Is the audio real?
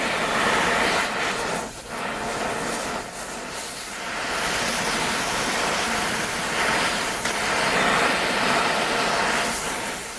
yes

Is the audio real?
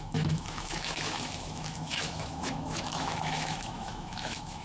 no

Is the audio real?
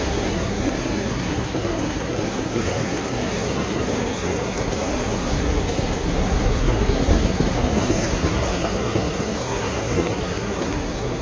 no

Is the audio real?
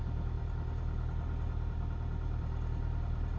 yes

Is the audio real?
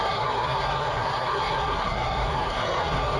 no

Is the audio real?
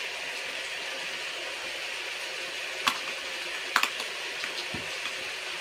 yes